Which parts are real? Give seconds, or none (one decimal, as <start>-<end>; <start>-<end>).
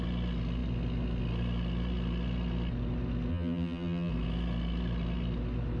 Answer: 0.0-3.3; 4.1-5.8